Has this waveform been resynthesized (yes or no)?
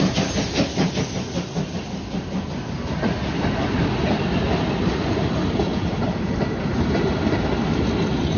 no